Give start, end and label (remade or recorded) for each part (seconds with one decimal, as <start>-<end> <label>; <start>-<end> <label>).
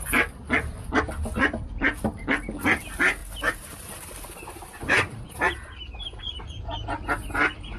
0.0-3.2 recorded; 3.2-6.2 remade; 6.2-7.8 recorded